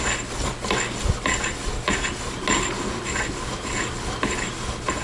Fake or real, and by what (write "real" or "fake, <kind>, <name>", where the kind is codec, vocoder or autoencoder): real